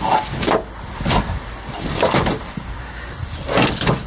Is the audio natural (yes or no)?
yes